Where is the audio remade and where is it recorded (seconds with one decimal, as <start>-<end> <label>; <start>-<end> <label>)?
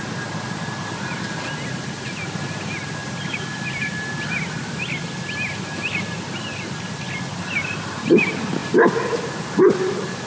0.0-10.3 recorded